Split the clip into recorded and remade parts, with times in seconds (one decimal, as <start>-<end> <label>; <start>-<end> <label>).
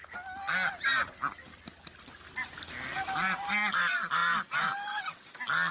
0.0-5.7 recorded